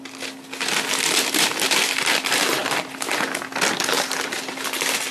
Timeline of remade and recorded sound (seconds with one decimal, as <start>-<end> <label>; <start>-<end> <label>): 0.0-5.1 recorded